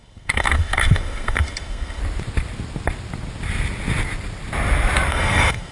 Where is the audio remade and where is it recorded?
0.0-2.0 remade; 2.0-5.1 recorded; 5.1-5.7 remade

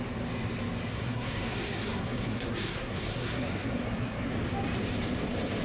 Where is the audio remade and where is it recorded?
0.0-0.9 recorded; 0.9-4.3 remade; 4.3-5.6 recorded

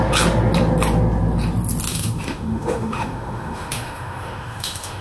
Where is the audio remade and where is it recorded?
0.0-1.9 recorded; 1.9-5.0 remade